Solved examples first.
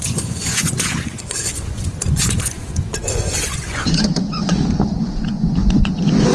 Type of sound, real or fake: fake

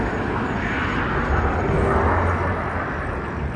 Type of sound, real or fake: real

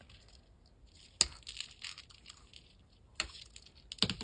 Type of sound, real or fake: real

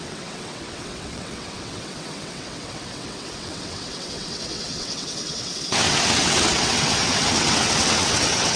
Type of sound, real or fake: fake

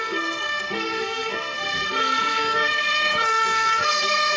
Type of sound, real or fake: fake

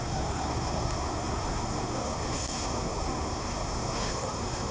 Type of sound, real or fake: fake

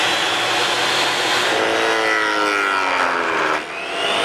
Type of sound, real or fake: real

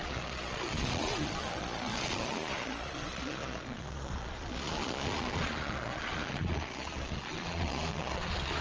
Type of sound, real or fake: fake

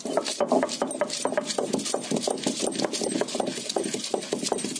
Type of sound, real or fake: real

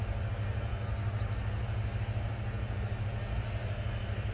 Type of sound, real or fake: real